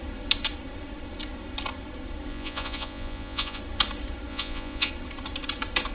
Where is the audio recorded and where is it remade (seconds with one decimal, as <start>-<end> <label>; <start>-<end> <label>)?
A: 0.0-2.3 recorded; 2.3-3.6 remade; 3.6-4.3 recorded; 4.3-4.9 remade; 4.9-5.9 recorded